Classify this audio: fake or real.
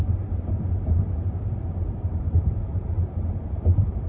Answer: fake